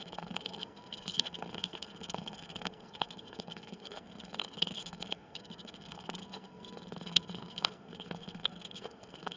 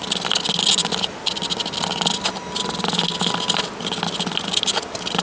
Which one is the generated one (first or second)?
first